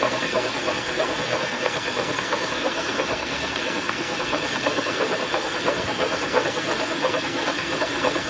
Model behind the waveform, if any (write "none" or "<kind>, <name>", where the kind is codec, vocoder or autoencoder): codec, SNAC